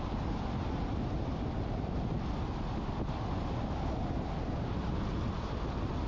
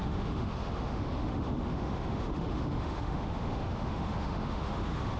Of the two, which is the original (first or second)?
first